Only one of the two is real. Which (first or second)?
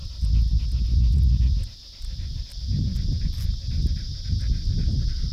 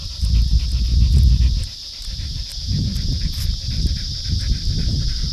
first